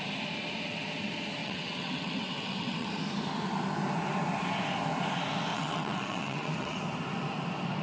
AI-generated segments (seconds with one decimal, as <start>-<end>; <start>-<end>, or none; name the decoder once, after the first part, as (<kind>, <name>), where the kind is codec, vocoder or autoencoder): 1.4-2.9 (vocoder, WaveNeXt); 5.5-6.8